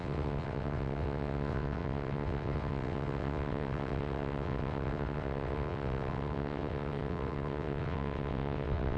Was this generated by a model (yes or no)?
yes